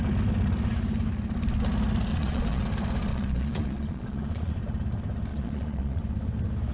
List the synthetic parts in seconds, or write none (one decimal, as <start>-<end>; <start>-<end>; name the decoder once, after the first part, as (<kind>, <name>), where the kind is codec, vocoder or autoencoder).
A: 2.1-2.6 (vocoder, Vocos); 3.1-4.5; 5.3-6.0